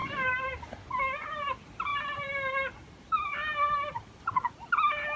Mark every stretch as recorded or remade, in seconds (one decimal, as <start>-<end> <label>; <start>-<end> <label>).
0.0-5.2 recorded